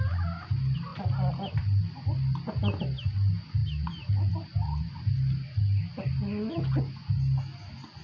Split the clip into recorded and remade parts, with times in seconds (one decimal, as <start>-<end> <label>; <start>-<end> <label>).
0.0-8.0 recorded